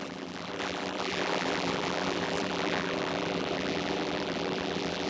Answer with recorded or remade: remade